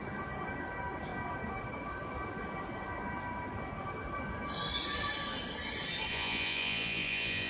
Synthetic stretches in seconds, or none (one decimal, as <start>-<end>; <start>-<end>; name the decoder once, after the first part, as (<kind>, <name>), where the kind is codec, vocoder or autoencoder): 6.1-7.5 (vocoder, Vocos)